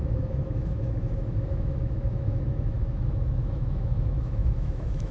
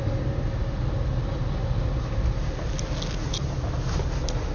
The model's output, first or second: first